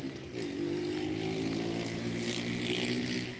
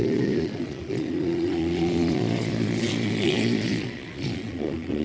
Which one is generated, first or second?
second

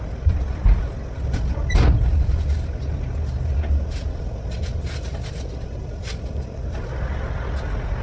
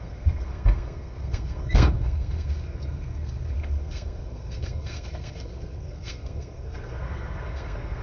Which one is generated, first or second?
second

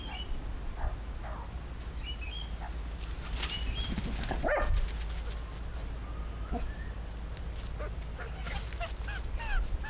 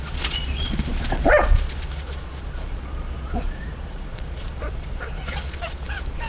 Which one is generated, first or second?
second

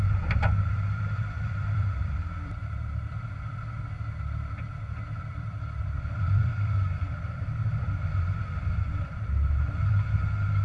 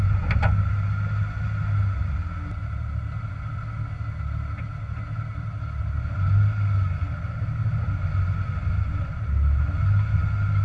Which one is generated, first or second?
first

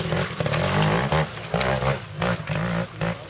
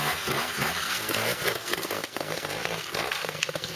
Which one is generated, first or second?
second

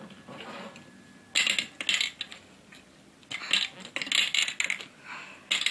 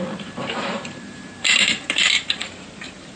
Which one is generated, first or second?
second